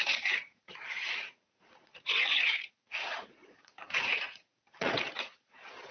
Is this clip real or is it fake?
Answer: fake